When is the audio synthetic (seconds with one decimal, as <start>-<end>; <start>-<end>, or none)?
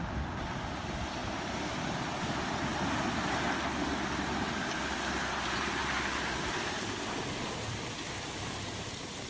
0.0-1.2; 2.2-2.7; 4.6-9.3